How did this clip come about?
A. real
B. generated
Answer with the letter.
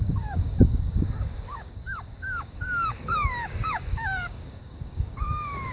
B